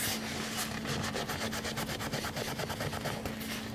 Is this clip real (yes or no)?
yes